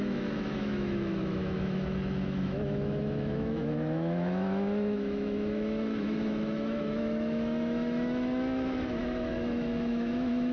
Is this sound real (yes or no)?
no